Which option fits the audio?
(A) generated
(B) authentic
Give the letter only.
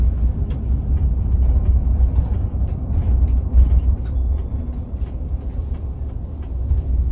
B